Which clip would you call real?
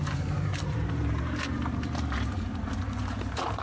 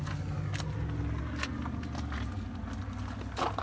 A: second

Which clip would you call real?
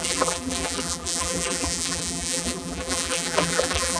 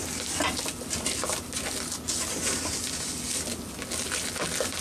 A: second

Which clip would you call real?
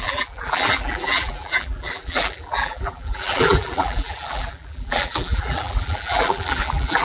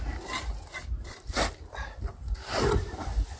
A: second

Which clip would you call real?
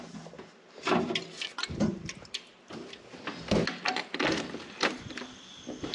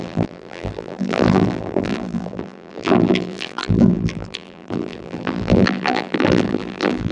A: first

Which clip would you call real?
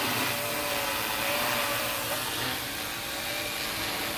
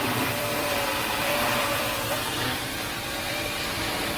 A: first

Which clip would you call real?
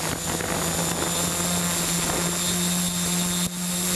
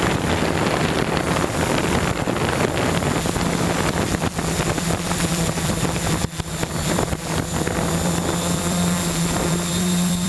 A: first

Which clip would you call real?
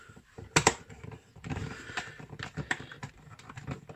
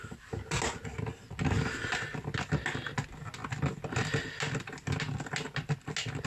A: second